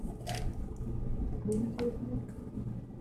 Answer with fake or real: real